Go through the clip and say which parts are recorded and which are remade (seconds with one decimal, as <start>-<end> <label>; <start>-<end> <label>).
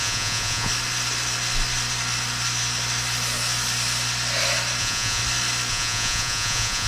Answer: 0.0-0.7 remade; 0.7-4.8 recorded; 4.8-5.2 remade; 5.2-5.7 recorded; 5.7-6.9 remade